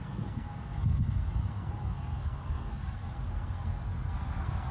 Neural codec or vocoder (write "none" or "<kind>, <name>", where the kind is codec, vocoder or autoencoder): codec, SNAC